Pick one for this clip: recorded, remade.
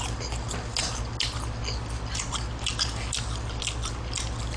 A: recorded